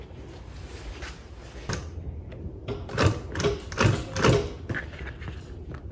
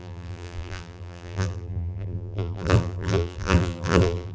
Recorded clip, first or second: first